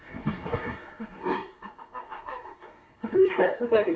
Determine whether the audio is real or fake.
fake